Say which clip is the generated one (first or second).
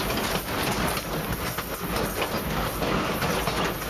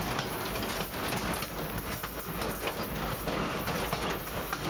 first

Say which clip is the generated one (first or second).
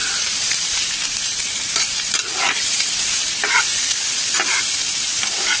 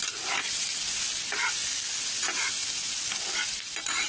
first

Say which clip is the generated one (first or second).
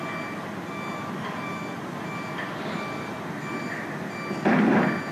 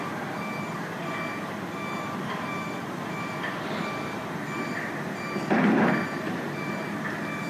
second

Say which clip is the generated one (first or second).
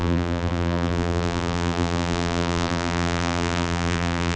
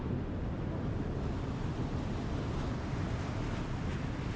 first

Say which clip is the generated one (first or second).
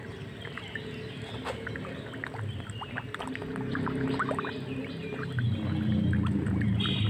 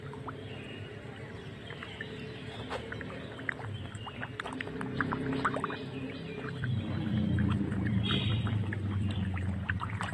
second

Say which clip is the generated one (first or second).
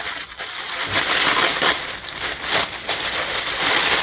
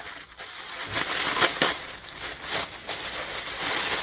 first